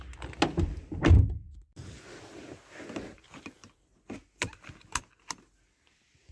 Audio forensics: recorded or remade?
recorded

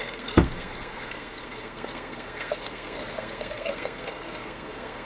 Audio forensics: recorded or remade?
remade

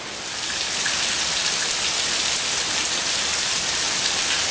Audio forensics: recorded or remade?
recorded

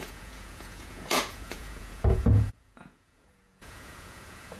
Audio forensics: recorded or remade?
remade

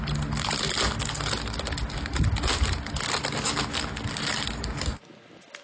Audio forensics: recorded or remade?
recorded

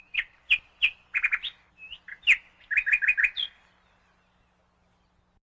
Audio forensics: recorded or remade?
recorded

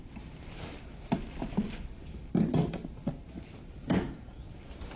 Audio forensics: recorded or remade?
remade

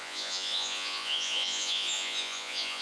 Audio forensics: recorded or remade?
remade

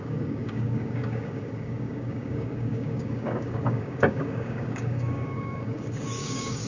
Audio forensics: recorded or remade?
remade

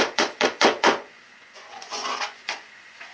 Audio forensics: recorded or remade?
remade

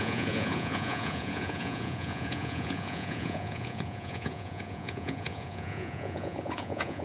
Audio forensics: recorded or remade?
remade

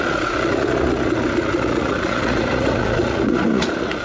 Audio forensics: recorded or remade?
remade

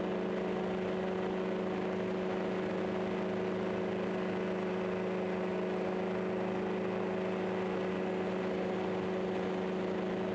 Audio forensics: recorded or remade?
recorded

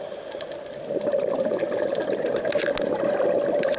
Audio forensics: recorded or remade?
recorded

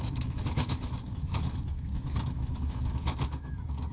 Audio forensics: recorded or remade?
remade